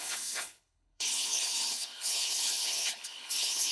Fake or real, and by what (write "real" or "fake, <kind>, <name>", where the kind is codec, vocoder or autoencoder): fake, codec, HILCodec